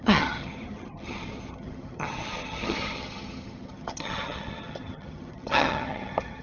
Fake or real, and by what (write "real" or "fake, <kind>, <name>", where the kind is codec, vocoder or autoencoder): fake, vocoder, HiFi-GAN